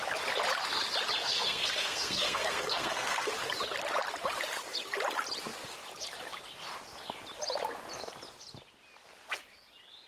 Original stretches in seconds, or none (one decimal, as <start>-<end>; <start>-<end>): 0.0-1.2; 3.3-10.1